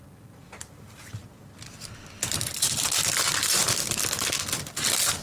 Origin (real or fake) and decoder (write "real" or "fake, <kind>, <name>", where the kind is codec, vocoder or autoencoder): real